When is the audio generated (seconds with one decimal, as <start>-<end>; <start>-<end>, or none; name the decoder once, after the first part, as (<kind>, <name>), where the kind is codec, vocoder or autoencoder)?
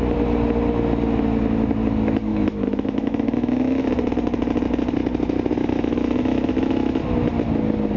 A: 2.3-3.9 (autoencoder, DAC-VAE); 5.7-7.0